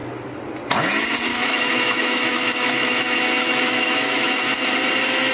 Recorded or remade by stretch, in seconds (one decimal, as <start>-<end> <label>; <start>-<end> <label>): 0.0-1.3 recorded; 1.3-4.5 remade; 4.5-5.3 recorded

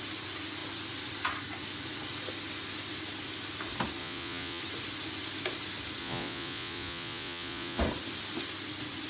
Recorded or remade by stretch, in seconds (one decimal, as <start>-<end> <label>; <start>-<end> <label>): 0.0-4.0 recorded; 4.0-4.6 remade; 4.6-6.0 recorded; 6.0-7.8 remade; 7.8-9.1 recorded

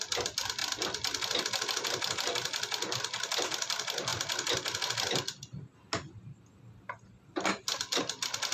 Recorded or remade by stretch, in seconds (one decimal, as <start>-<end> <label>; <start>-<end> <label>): 0.0-8.5 recorded

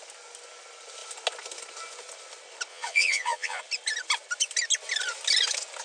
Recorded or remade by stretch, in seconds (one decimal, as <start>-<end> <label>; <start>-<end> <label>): 0.0-2.7 recorded; 2.7-3.6 remade; 3.6-5.8 recorded

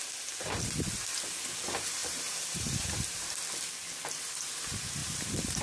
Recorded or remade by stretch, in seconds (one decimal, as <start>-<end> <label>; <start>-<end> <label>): 0.0-2.0 recorded; 2.0-3.3 remade; 3.3-5.0 recorded; 5.0-5.6 remade

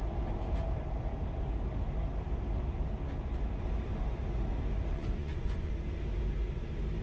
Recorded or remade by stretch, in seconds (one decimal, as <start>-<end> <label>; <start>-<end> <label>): 0.0-4.9 recorded; 4.9-5.7 remade; 5.7-7.0 recorded

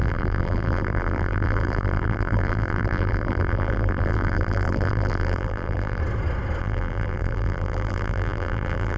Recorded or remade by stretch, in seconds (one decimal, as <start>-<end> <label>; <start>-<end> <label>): 0.0-6.0 remade; 6.0-6.6 recorded; 6.6-9.0 remade

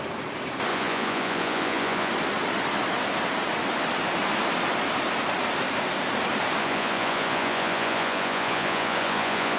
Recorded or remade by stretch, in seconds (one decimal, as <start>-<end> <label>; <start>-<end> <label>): 0.0-0.7 recorded; 0.7-2.1 remade; 2.1-6.6 recorded; 6.6-9.6 remade